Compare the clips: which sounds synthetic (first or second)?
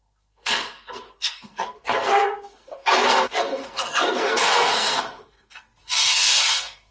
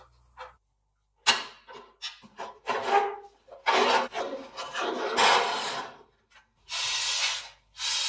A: first